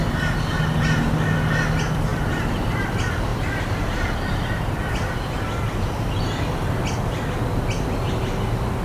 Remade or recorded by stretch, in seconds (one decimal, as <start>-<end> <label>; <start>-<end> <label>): 0.0-2.1 recorded; 2.1-2.9 remade; 2.9-3.3 recorded; 3.3-6.2 remade; 6.2-8.8 recorded